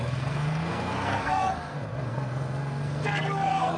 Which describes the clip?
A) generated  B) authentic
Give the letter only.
A